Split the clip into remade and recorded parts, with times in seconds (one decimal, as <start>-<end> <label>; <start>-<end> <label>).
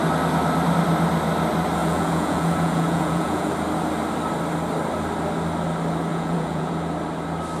0.0-1.8 recorded; 1.8-3.5 remade; 3.5-6.1 recorded; 6.1-6.7 remade; 6.7-7.6 recorded